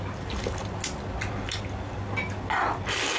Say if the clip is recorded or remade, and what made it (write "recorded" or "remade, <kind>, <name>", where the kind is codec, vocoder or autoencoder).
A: recorded